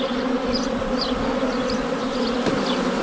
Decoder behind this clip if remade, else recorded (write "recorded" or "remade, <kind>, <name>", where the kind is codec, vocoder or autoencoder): recorded